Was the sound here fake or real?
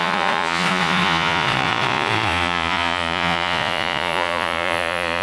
fake